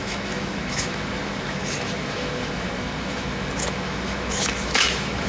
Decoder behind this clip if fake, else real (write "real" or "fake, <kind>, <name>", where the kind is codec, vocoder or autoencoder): fake, autoencoder, DAC-VAE